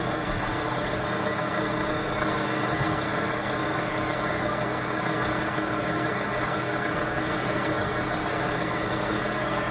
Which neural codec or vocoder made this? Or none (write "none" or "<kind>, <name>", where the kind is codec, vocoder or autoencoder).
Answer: codec, SNAC